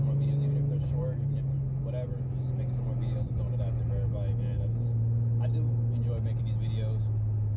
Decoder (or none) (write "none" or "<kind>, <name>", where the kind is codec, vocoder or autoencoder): none